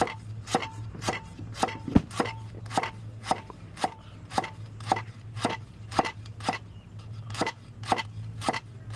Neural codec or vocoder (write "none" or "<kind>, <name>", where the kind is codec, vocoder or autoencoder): none